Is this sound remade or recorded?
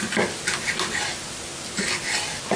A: recorded